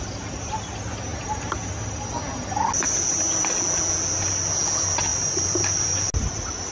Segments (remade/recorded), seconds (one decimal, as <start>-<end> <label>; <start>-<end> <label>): 0.0-1.1 recorded; 1.1-1.7 remade; 1.7-5.1 recorded; 5.1-6.0 remade; 6.0-6.7 recorded